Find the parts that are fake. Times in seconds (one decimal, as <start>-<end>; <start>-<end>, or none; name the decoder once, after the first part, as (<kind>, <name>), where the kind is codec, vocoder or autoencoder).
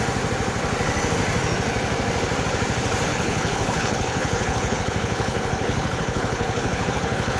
3.1-7.4 (codec, HILCodec)